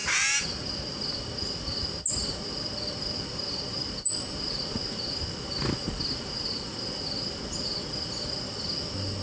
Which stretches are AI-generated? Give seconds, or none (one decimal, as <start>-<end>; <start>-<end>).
none

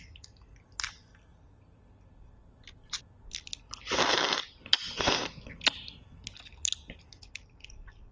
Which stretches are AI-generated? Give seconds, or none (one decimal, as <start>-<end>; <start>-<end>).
none

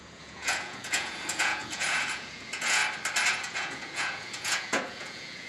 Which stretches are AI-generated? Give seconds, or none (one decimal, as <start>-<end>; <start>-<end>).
0.0-2.8; 3.3-5.5